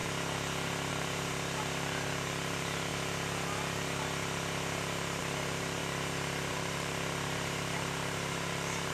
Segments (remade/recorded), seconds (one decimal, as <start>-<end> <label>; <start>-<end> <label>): 0.0-0.9 recorded; 0.9-2.9 remade; 2.9-5.2 recorded; 5.2-5.8 remade; 5.8-6.5 recorded; 6.5-8.9 remade